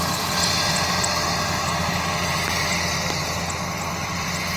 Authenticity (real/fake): real